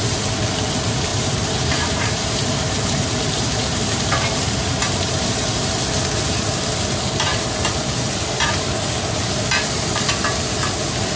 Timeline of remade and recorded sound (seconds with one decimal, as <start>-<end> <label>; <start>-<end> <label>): 0.0-1.1 recorded; 1.1-5.8 remade; 5.8-7.3 recorded; 7.3-8.7 remade; 8.7-11.2 recorded